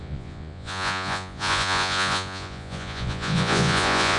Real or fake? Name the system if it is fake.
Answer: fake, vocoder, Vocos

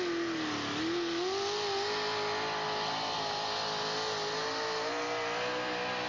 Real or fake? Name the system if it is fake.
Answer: real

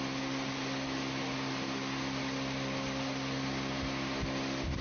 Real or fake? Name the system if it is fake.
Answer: real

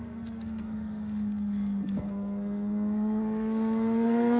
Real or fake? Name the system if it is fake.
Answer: fake, codec, SNAC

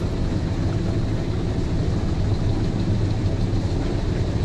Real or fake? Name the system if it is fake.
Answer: real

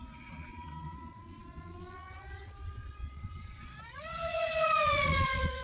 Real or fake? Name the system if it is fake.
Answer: fake, vocoder, Vocos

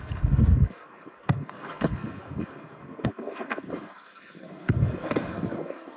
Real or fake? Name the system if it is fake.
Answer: fake, codec, SNAC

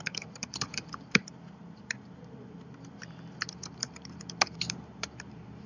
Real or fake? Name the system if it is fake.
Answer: fake, vocoder, BigVGAN v2